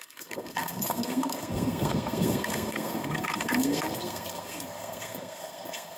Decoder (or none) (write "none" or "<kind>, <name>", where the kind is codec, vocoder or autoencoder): codec, SNAC